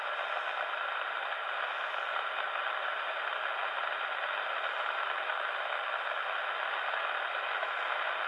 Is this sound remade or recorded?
recorded